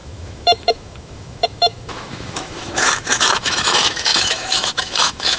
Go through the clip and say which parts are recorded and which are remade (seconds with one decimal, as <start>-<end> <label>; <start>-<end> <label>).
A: 0.0-5.4 remade